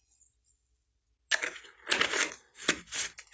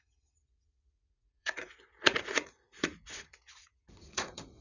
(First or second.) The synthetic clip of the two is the second